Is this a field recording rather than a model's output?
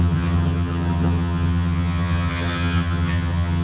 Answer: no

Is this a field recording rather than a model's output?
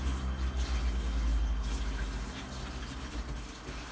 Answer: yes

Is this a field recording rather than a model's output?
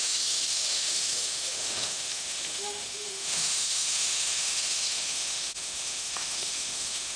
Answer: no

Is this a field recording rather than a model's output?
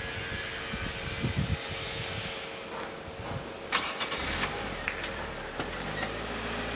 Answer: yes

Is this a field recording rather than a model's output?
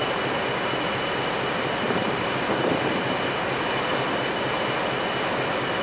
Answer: yes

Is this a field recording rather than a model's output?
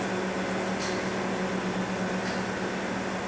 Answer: yes